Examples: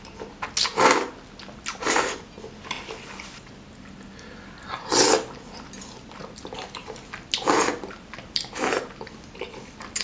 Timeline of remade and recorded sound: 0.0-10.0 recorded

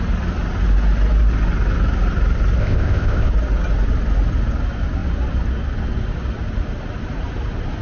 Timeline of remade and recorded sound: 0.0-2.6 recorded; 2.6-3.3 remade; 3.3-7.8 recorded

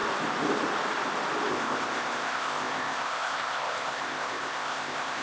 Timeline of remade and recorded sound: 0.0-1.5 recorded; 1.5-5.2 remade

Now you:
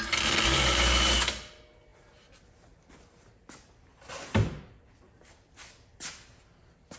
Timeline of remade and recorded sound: 0.0-7.0 recorded

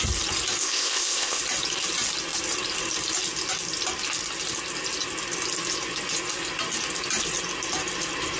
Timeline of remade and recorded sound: 0.0-0.6 recorded; 0.6-1.4 remade; 1.4-8.4 recorded